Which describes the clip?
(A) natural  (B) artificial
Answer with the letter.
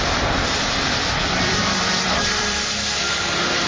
B